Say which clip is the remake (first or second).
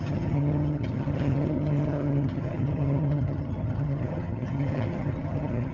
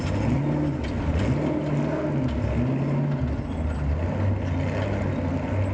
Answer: first